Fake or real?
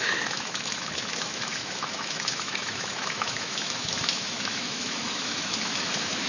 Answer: fake